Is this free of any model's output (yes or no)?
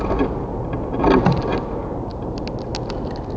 yes